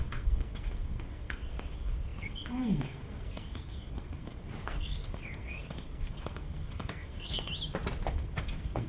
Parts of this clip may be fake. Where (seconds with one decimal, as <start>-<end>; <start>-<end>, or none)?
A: 0.0-7.5; 8.1-8.9